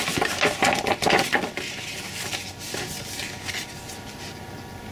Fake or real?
real